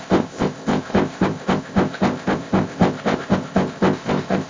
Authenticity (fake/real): fake